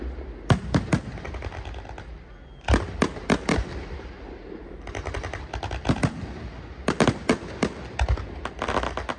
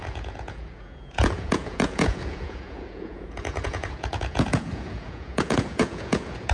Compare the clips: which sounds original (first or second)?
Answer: first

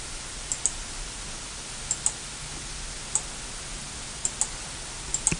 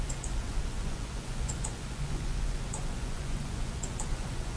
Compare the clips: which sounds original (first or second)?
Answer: first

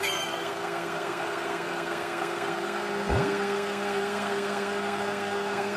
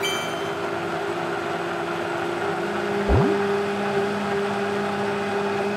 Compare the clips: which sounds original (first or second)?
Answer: second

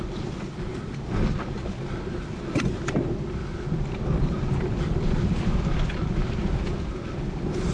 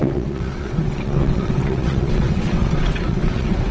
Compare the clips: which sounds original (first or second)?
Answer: first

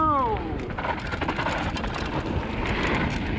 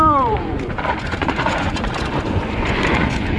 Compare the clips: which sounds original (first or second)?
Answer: first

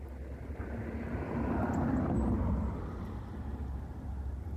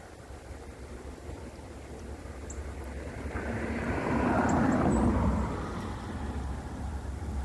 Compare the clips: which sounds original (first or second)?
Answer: first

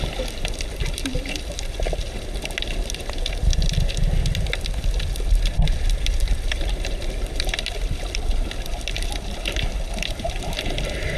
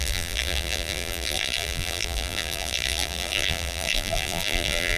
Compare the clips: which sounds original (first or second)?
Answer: first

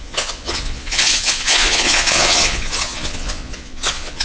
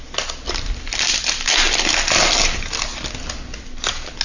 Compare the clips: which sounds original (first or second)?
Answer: second